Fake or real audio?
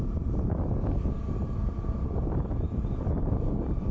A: real